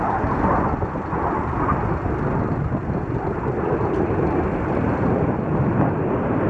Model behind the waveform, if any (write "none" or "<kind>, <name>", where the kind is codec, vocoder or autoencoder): none